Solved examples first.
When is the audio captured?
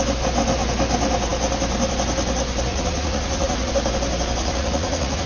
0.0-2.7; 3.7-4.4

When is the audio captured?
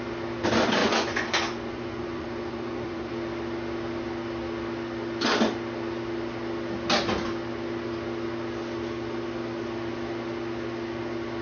0.0-0.8; 3.1-11.4